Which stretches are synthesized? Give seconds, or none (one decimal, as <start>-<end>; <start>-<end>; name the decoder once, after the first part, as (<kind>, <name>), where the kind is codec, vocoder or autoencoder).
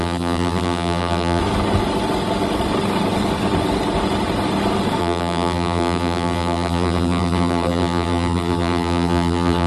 0.0-1.4 (vocoder, BigVGAN v2); 5.0-9.7